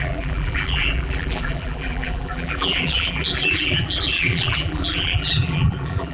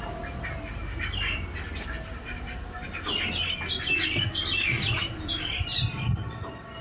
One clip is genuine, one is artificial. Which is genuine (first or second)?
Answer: second